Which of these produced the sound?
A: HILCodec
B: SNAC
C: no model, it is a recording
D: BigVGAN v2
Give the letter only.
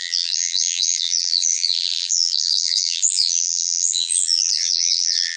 D